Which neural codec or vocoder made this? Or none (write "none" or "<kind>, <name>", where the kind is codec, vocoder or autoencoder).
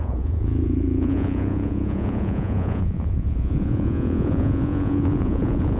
vocoder, Vocos